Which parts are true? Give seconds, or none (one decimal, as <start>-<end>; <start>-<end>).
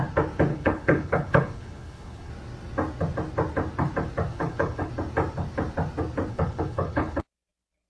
0.0-0.5; 2.3-4.3; 4.9-6.3; 7.2-7.9